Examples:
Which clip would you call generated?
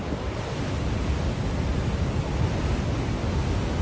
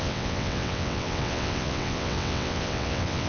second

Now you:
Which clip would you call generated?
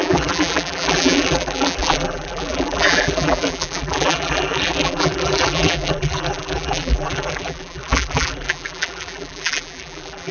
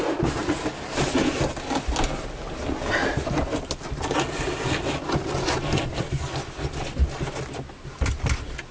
first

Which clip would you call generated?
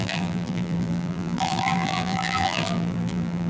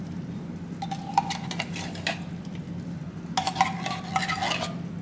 first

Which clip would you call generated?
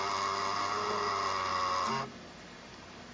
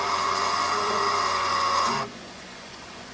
second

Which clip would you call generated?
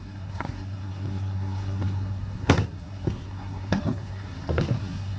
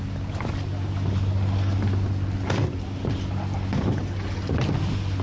first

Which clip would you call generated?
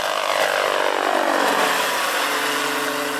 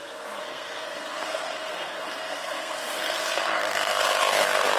second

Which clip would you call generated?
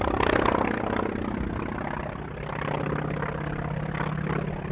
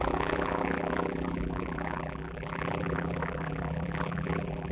second